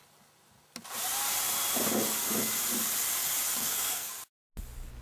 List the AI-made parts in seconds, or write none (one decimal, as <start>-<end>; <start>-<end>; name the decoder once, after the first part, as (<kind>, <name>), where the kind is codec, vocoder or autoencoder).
3.6-4.1 (codec, SNAC)